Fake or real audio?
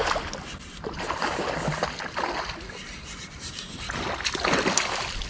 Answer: real